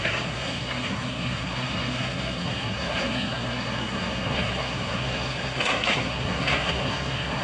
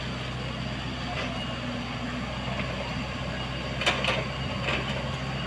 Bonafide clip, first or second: second